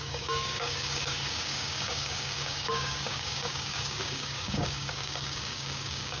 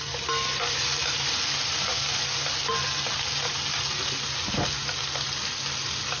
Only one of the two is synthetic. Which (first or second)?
first